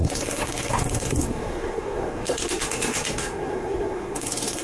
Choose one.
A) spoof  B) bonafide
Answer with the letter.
A